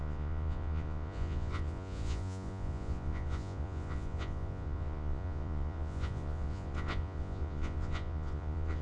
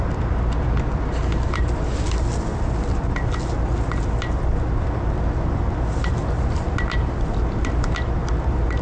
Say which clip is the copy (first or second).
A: first